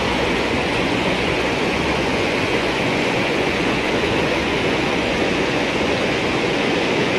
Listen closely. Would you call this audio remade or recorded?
remade